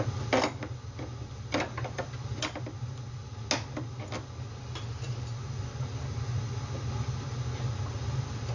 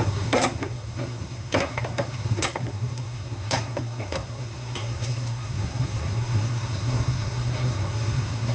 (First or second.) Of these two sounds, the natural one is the first